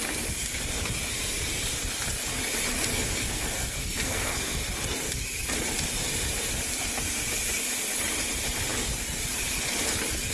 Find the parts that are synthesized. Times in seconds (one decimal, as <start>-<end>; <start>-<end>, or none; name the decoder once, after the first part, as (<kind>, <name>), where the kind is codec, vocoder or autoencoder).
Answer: 2.9-4.6 (codec, SNAC)